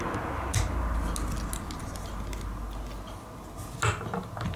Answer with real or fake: real